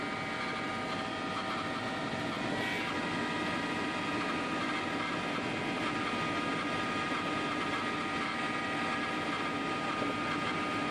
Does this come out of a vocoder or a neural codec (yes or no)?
no